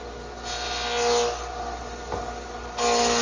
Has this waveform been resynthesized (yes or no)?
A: no